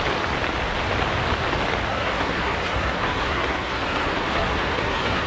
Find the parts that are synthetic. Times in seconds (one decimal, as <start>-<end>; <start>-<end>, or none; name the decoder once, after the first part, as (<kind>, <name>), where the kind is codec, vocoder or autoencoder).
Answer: 1.9-5.3 (codec, SNAC)